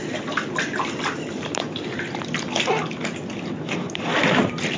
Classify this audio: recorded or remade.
recorded